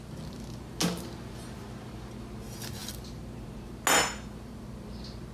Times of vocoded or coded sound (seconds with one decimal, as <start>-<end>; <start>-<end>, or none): none